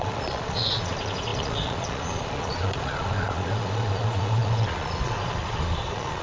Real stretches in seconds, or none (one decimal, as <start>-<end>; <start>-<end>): none